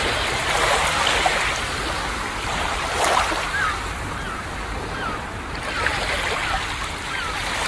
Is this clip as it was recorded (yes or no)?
yes